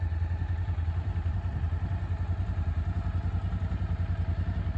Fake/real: real